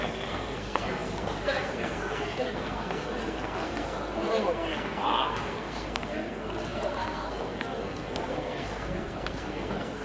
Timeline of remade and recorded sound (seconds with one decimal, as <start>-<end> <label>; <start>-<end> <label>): 0.0-10.0 remade